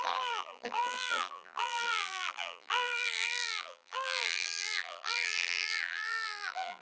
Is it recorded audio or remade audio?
remade